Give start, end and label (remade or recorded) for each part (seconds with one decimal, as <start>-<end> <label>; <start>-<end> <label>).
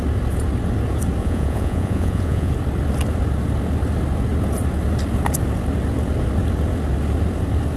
0.0-1.2 recorded; 1.2-2.5 remade; 2.5-7.8 recorded